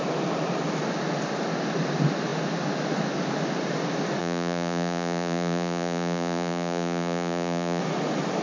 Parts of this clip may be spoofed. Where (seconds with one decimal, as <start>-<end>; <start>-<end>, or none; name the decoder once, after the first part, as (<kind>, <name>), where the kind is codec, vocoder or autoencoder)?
4.2-7.8 (vocoder, Vocos)